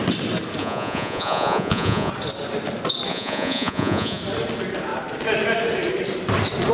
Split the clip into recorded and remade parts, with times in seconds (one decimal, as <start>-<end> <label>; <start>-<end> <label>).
0.0-0.6 recorded; 0.6-2.1 remade; 2.1-3.1 recorded; 3.1-4.2 remade; 4.2-6.7 recorded